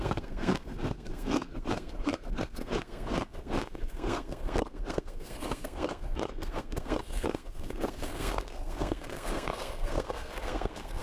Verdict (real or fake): fake